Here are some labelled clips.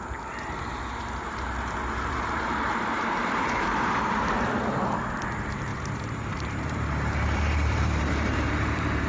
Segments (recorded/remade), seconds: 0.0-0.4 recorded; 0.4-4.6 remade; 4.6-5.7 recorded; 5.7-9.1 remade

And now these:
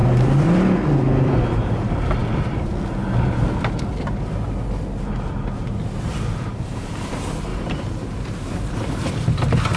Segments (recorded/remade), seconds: 0.0-2.2 recorded; 2.2-2.7 remade; 2.7-7.5 recorded; 7.5-9.1 remade; 9.1-9.8 recorded